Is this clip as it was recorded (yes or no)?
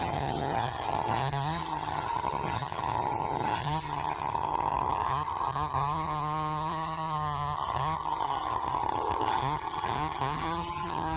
no